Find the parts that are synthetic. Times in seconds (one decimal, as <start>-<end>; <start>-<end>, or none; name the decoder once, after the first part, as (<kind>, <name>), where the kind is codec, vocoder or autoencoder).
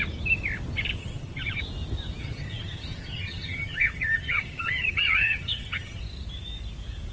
1.0-1.6 (vocoder, HiFi-GAN); 2.2-6.0